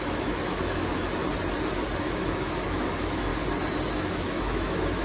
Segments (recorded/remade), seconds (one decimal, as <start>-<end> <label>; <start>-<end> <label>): 0.0-1.2 remade; 1.2-2.0 recorded; 2.0-3.3 remade; 3.3-4.0 recorded; 4.0-5.0 remade